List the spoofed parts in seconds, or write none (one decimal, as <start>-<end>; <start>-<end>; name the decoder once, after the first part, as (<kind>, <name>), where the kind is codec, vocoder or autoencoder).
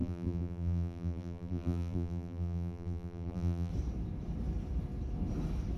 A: 0.0-3.7 (vocoder, BigVGAN v2)